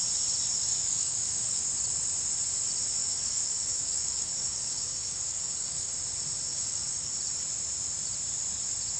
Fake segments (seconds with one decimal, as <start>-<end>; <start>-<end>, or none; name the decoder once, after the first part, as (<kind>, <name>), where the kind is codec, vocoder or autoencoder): 0.7-1.6 (codec, DAC); 3.0-5.9; 6.5-7.1